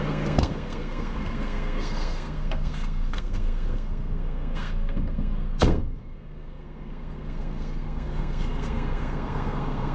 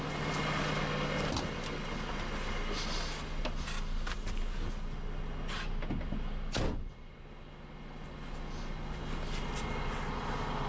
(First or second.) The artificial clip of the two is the first